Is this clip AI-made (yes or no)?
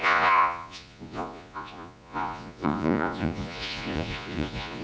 yes